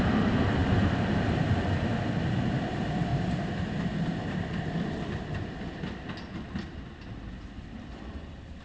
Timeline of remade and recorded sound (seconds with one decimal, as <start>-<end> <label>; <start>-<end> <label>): 0.0-0.6 remade; 0.6-1.4 recorded; 1.4-1.9 remade; 1.9-2.5 recorded; 2.5-8.6 remade